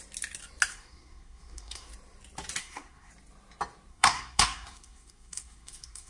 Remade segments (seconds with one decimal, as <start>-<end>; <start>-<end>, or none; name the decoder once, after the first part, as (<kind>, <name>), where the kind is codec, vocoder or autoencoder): 0.7-1.9 (codec, SNAC); 2.6-3.1; 3.9-6.1